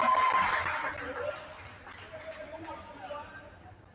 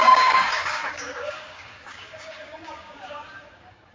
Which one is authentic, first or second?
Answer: first